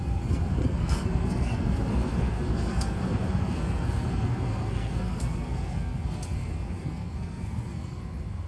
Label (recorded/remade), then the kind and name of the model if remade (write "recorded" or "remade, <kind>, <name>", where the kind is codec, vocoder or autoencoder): remade, codec, SNAC